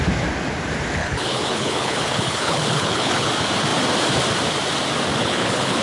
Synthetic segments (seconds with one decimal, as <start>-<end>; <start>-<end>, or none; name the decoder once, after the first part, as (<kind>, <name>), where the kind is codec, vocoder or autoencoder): 1.0-3.3 (codec, HILCodec); 5.2-5.8